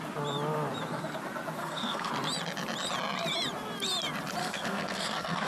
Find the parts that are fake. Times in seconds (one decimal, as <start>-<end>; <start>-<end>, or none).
1.6-2.1; 4.4-5.5